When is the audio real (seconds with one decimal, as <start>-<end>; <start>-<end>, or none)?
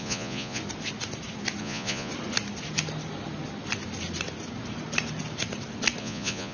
0.6-1.6; 2.1-6.0